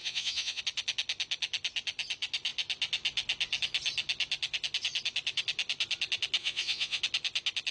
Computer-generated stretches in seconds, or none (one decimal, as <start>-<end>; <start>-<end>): 0.0-0.6; 6.4-7.0